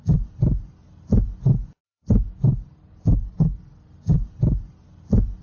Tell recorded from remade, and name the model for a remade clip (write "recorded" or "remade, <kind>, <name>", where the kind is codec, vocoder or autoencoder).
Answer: recorded